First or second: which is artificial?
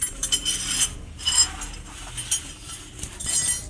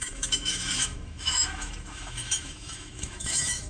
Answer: second